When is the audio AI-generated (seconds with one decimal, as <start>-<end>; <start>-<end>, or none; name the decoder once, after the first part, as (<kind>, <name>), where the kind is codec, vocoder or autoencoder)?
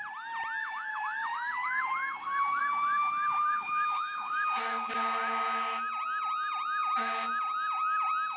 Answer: 0.6-4.9 (codec, DAC)